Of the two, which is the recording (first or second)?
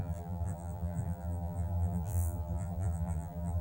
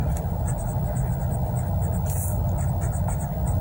second